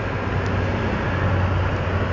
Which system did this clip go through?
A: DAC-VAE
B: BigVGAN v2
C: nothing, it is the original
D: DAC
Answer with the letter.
C